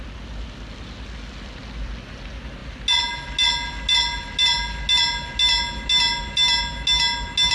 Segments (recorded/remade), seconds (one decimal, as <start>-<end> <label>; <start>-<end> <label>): 0.0-7.5 recorded